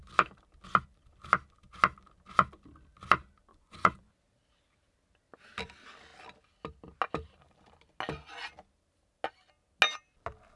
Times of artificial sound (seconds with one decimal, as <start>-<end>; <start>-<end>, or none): 3.5-4.1